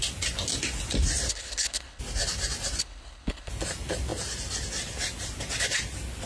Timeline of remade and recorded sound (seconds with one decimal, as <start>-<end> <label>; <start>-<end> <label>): 0.0-1.3 recorded; 1.3-2.0 remade; 2.0-2.8 recorded; 2.8-3.5 remade; 3.5-6.3 recorded